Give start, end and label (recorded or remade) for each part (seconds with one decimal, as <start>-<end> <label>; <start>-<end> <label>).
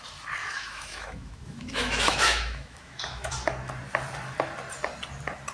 0.0-0.4 recorded; 0.4-3.3 remade; 3.3-5.5 recorded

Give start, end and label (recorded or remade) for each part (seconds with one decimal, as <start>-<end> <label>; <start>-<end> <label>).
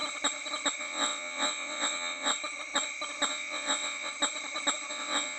0.0-0.8 recorded; 0.8-2.3 remade; 2.3-3.3 recorded; 3.3-4.1 remade; 4.1-4.9 recorded; 4.9-5.4 remade